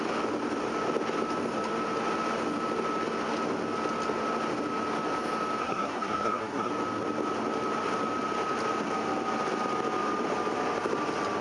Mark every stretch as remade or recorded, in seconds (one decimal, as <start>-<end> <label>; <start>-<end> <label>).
0.0-5.6 recorded; 5.6-6.7 remade; 6.7-11.4 recorded